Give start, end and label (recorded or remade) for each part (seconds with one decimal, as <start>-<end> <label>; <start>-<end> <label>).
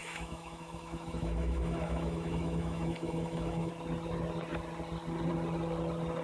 0.0-3.7 remade; 3.7-6.2 recorded